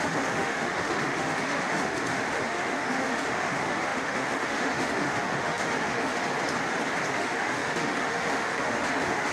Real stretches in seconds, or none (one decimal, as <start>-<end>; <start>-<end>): 6.3-7.1